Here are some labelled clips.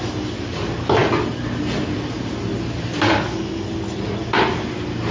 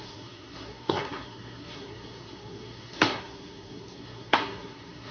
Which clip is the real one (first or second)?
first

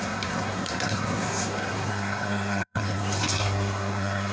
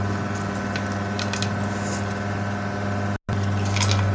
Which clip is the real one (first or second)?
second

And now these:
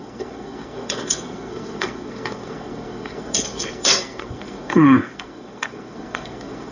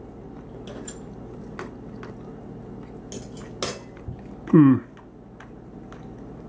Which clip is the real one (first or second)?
second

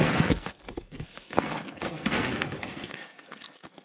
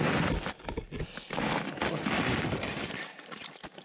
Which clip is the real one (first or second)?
second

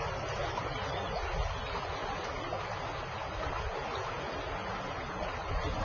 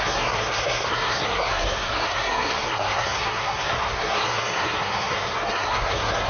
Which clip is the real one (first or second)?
first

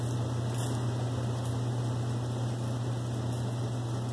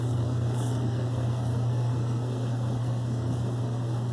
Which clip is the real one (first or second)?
first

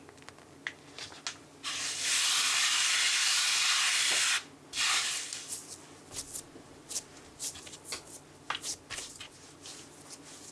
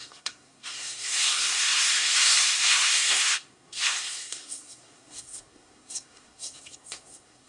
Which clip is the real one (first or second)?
first